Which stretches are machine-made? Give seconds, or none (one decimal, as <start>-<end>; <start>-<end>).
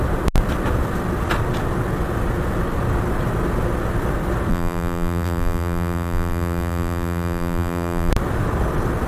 4.5-8.1